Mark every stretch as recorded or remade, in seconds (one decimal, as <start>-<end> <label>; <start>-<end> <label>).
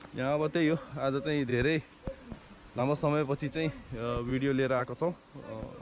0.0-5.8 recorded